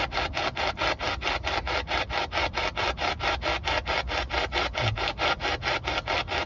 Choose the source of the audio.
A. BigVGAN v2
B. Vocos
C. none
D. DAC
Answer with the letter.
C